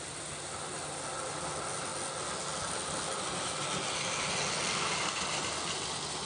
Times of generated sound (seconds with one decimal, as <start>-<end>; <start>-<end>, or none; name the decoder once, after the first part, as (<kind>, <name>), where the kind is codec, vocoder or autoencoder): none